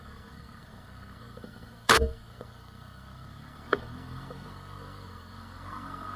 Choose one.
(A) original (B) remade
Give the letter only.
B